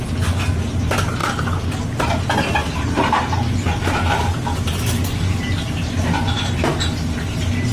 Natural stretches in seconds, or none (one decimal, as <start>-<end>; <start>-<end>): 0.0-7.7